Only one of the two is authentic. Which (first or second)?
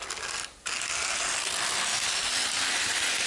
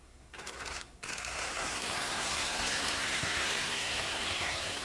first